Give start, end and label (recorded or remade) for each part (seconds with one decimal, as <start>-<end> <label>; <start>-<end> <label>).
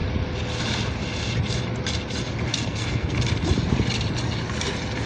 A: 0.0-2.5 recorded; 2.5-3.2 remade; 3.2-5.1 recorded